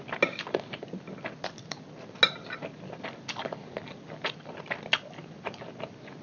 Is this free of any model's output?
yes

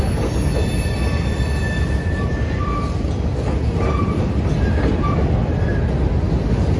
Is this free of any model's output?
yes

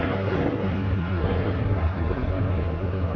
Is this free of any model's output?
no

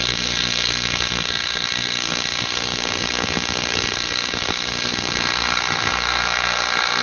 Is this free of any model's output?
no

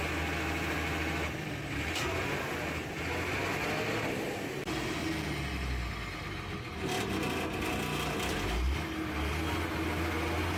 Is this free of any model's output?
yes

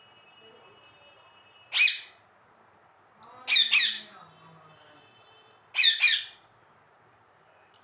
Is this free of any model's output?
yes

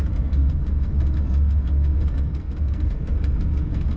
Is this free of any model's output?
no